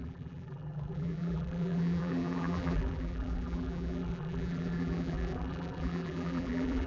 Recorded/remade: remade